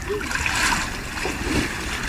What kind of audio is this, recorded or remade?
recorded